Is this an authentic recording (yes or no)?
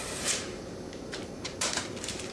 no